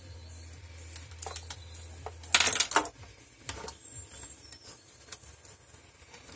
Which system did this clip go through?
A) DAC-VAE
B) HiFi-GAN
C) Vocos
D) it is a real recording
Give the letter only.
D